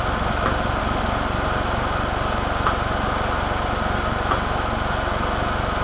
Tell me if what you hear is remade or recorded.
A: recorded